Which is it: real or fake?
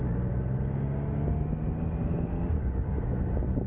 real